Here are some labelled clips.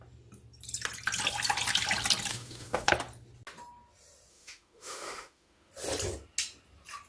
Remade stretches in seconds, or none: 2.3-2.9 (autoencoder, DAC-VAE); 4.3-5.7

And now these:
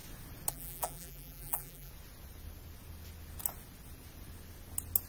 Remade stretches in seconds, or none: 0.5-1.9 (vocoder, BigVGAN v2)

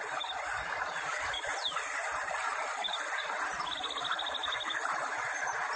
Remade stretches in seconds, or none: none

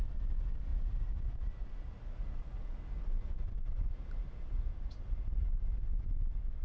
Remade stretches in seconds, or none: none

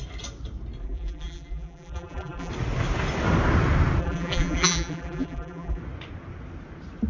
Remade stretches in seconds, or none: 0.8-2.5 (vocoder, BigVGAN v2); 4.0-5.8